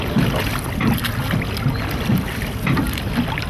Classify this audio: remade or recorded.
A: recorded